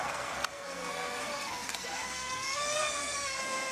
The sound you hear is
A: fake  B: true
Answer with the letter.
A